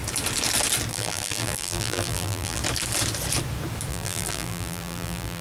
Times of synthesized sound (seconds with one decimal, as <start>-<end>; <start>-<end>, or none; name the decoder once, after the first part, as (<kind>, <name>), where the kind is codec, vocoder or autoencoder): 0.9-2.6 (vocoder, BigVGAN v2); 3.9-5.4